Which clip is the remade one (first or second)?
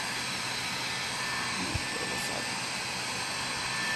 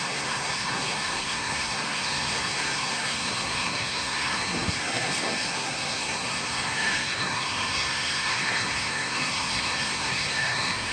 second